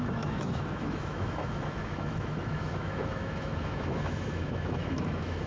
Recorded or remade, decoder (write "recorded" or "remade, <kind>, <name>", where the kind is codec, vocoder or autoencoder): remade, autoencoder, DAC-VAE